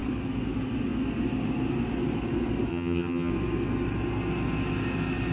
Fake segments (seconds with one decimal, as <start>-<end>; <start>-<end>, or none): 2.7-3.3